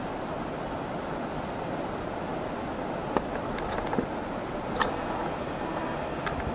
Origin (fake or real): real